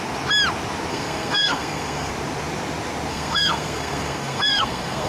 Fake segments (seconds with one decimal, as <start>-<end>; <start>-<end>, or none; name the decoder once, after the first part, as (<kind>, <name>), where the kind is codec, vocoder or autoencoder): 0.9-2.1 (codec, SNAC); 3.1-5.1

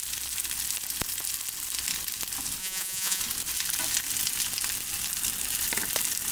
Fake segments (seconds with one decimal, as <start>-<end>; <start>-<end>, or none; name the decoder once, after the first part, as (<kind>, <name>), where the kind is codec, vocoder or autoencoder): 2.6-3.2 (vocoder, Vocos)

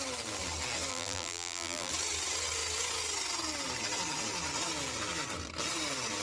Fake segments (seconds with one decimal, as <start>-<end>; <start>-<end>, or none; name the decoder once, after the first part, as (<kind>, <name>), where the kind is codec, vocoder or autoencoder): 0.9-1.9 (vocoder, BigVGAN v2)

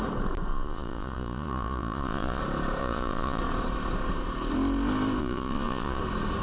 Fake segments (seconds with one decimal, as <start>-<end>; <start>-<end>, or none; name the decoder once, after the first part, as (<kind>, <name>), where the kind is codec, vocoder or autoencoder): 0.5-2.4 (vocoder, Vocos); 2.8-3.4; 5.2-6.0

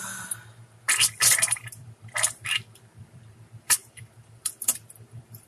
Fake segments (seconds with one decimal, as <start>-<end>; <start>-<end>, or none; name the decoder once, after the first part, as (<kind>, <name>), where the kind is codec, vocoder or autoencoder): 0.0-5.5 (vocoder, BigVGAN v2)